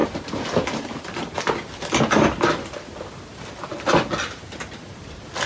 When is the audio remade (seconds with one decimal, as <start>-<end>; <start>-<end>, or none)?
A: 0.0-1.3